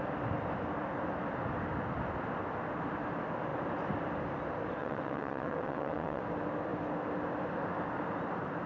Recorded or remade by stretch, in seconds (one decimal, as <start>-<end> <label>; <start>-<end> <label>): 0.0-4.8 recorded; 4.8-6.2 remade; 6.2-8.7 recorded